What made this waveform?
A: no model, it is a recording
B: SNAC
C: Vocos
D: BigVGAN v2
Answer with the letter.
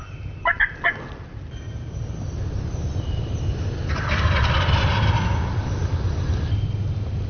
A